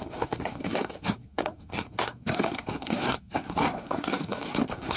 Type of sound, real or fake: fake